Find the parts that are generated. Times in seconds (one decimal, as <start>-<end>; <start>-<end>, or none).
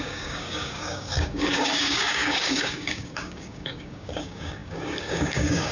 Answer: 0.0-5.7